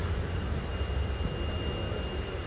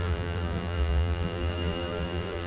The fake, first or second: second